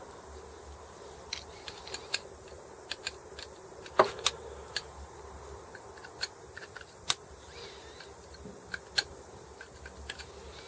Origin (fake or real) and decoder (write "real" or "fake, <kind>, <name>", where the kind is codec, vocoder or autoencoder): real